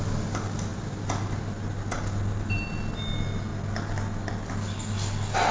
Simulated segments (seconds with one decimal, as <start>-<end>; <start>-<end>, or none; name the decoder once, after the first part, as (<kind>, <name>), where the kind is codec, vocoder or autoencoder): none